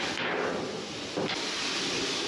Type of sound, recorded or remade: recorded